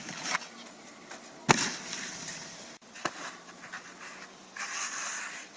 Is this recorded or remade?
recorded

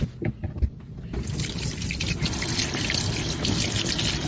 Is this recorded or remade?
recorded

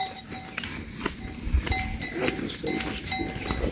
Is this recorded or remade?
recorded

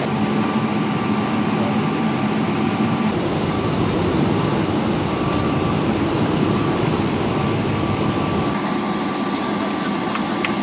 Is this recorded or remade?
recorded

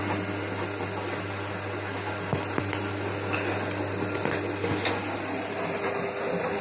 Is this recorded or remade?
recorded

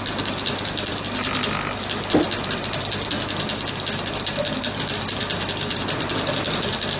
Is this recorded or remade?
recorded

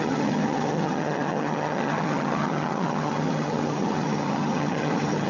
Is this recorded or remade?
remade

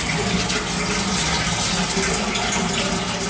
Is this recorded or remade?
recorded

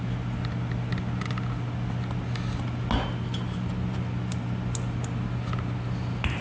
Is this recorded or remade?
recorded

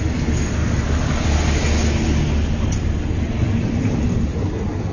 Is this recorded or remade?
recorded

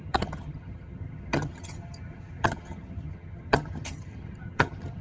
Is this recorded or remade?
remade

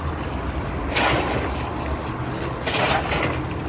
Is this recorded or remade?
recorded